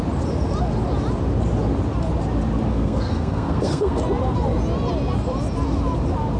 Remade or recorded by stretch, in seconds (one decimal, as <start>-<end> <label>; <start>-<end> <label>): 0.0-2.7 recorded; 2.7-4.0 remade; 4.0-6.4 recorded